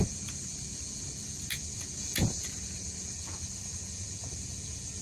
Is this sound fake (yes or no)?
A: yes